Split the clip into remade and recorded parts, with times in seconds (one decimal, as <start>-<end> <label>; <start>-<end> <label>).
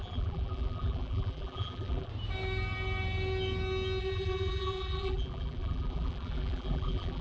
0.0-2.1 remade; 2.1-4.0 recorded; 4.0-7.2 remade